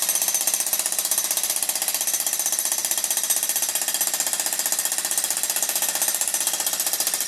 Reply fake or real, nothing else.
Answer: real